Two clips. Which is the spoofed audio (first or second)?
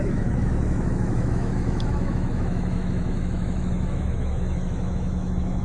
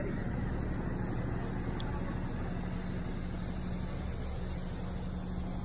first